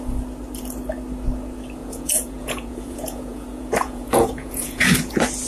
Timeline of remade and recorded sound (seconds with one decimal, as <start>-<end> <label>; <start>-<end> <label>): 0.0-1.8 recorded; 1.8-5.1 remade; 5.1-5.5 recorded